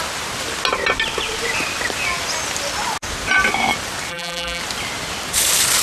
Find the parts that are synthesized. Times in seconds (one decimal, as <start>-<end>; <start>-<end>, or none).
4.1-4.6